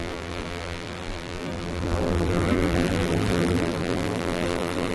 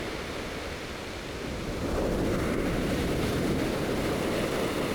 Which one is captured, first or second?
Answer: second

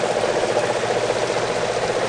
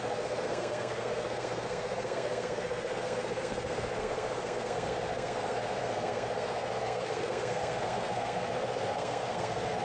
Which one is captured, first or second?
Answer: first